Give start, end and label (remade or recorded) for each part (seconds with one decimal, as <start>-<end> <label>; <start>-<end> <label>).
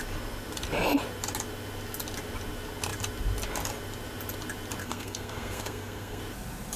0.0-4.8 recorded; 4.8-6.2 remade; 6.2-6.8 recorded